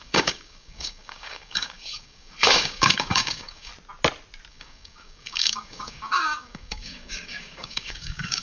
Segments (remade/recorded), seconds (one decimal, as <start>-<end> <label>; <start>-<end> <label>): 0.0-3.7 remade; 3.7-4.5 recorded; 4.5-8.4 remade